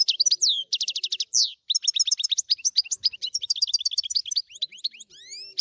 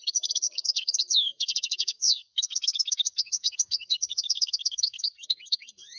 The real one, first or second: first